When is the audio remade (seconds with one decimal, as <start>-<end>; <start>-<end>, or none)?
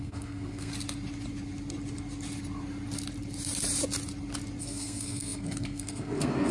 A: 0.0-0.7; 4.6-6.5